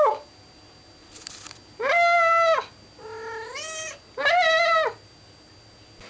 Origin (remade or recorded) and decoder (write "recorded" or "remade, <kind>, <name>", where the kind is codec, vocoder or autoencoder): recorded